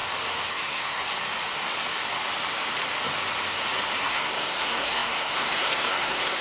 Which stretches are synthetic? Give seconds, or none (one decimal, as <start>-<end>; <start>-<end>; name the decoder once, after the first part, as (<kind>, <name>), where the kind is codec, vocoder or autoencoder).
0.5-1.0 (codec, SNAC); 4.0-6.4